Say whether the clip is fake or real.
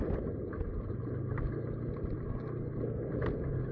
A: real